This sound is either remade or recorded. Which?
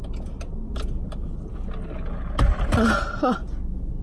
recorded